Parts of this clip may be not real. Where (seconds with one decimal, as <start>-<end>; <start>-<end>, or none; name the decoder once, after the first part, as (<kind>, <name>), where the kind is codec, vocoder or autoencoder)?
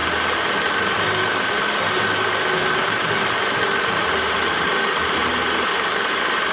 2.8-5.3 (vocoder, BigVGAN v2)